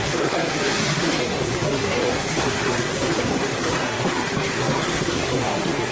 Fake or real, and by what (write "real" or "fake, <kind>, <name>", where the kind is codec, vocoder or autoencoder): fake, codec, SNAC